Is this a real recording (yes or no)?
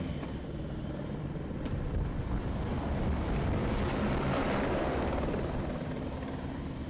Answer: no